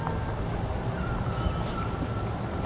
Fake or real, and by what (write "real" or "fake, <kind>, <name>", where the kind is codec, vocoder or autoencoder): real